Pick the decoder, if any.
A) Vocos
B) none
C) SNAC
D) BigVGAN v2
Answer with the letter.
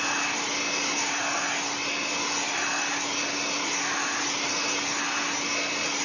B